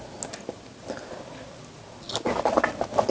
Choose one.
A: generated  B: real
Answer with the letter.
B